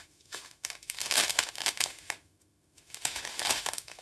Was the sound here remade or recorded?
remade